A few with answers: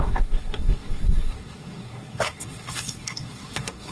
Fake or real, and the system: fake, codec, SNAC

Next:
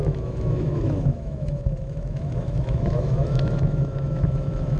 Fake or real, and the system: fake, autoencoder, DAC-VAE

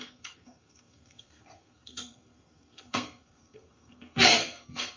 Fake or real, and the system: fake, codec, SNAC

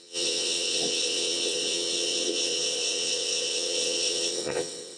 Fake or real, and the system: fake, vocoder, WaveNeXt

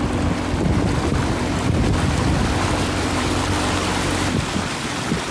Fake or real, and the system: real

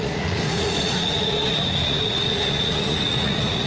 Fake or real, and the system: fake, vocoder, Vocos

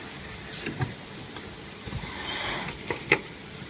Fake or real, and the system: real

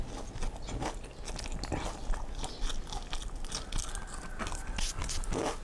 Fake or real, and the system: real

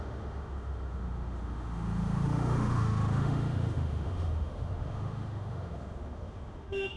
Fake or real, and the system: fake, autoencoder, DAC-VAE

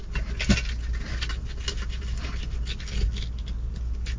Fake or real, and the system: real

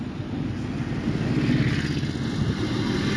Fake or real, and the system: real